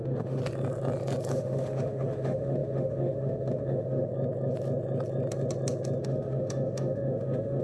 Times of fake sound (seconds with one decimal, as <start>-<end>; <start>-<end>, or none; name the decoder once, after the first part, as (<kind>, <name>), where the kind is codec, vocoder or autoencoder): 0.0-0.4 (autoencoder, DAC-VAE); 1.3-4.1; 6.0-7.6